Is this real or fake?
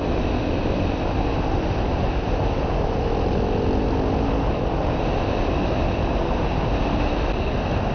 real